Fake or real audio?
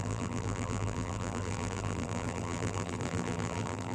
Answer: fake